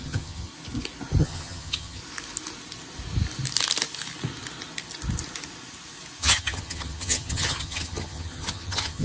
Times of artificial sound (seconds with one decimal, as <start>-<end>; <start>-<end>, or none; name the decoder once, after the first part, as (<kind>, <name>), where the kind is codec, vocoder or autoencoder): 0.0-0.5 (vocoder, HiFi-GAN); 1.2-2.0; 6.2-9.0

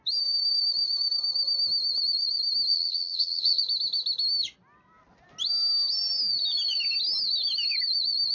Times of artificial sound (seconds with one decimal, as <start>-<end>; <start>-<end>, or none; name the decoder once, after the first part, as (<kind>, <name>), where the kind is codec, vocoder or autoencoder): 2.7-3.6 (vocoder, HiFi-GAN)

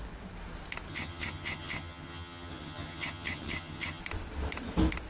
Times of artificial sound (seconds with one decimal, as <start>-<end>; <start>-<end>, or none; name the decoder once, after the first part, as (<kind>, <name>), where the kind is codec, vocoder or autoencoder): 0.9-4.0 (vocoder, HiFi-GAN)

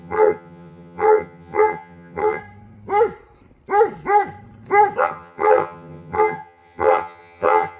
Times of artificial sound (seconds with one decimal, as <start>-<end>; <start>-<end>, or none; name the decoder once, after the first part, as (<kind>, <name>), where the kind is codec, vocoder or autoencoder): 0.0-2.4 (vocoder, HiFi-GAN); 5.0-7.8

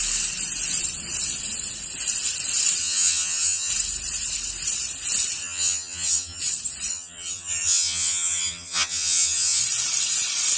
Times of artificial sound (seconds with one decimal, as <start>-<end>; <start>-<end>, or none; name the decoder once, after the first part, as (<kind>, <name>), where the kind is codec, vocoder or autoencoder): 2.8-3.7 (vocoder, HiFi-GAN); 5.4-6.4; 6.9-9.6

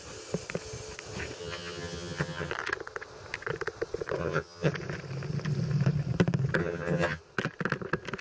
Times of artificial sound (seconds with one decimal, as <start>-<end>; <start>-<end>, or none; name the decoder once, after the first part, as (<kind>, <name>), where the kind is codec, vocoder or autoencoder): 1.4-2.5 (vocoder, HiFi-GAN); 4.2-4.7; 6.6-7.2